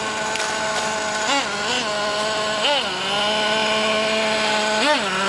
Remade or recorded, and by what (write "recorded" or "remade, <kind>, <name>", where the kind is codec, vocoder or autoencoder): recorded